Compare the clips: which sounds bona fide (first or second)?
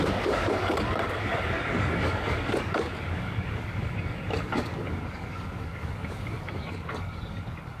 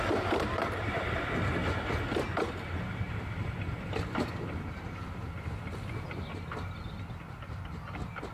second